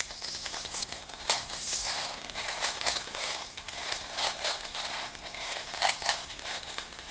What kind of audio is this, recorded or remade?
remade